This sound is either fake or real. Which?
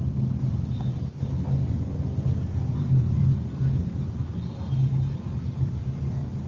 real